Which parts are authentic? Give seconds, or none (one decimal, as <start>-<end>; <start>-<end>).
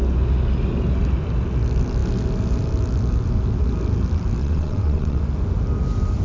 0.0-4.4; 5.2-6.2